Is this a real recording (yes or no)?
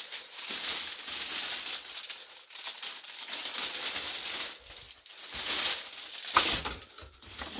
yes